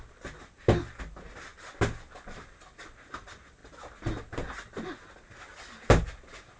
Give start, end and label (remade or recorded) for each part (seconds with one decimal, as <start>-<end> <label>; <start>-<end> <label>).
0.0-6.6 recorded